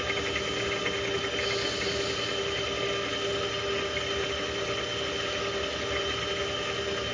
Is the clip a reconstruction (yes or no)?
no